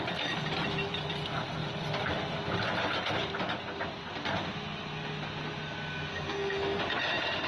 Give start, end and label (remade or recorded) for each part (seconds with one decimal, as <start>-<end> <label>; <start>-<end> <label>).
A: 0.0-6.1 recorded; 6.1-6.8 remade; 6.8-7.5 recorded